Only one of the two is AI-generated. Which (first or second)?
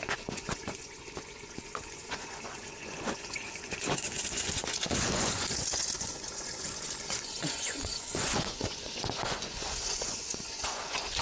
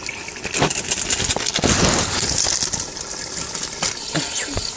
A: first